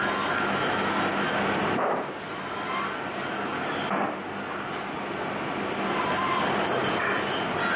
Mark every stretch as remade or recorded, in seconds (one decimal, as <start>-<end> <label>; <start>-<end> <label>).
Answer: 0.0-7.8 recorded